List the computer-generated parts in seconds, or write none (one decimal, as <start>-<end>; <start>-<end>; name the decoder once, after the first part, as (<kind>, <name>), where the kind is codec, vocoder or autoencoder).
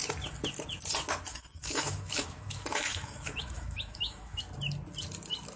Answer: 1.3-4.4 (autoencoder, DAC-VAE)